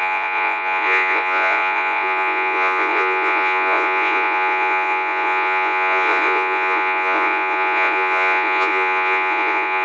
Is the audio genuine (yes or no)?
no